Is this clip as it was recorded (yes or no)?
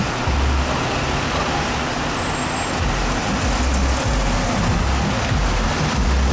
yes